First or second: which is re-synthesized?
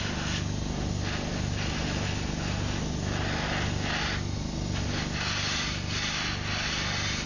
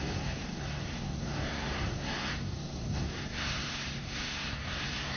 second